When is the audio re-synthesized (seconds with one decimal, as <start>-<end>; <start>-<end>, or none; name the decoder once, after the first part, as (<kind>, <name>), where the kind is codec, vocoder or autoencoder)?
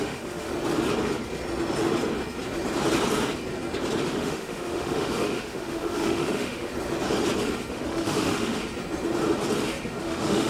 0.0-0.5 (autoencoder, DAC-VAE); 4.0-6.7; 7.7-8.6; 10.0-10.5